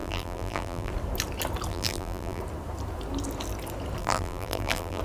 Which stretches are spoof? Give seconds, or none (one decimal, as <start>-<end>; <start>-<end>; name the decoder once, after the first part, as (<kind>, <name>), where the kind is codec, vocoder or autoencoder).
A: 0.0-0.9 (vocoder, BigVGAN v2); 1.7-2.4; 4.0-5.0

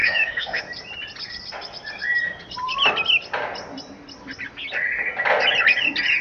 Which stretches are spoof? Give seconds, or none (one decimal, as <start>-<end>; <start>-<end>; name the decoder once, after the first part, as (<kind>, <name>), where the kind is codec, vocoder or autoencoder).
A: 0.0-0.6 (autoencoder, DAC-VAE)

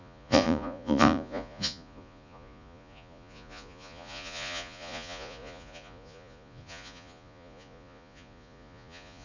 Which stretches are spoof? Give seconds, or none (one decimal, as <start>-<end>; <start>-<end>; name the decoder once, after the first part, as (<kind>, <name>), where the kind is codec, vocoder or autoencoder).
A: 0.0-9.2 (vocoder, Vocos)

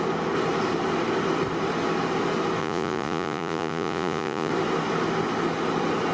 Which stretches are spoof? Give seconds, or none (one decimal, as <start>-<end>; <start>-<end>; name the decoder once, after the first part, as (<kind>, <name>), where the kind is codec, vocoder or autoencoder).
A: 2.6-4.5 (vocoder, Vocos)

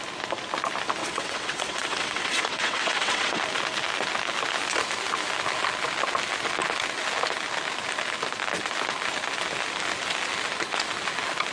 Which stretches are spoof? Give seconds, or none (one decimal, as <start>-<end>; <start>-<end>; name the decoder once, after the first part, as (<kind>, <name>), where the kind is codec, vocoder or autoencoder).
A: 1.0-3.4 (vocoder, WaveNeXt)